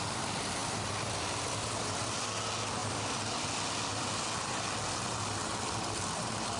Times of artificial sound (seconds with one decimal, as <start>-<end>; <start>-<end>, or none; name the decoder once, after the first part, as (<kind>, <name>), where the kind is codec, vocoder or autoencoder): none